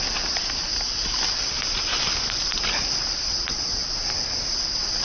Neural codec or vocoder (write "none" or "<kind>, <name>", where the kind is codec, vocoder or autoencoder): none